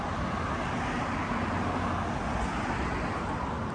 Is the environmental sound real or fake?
real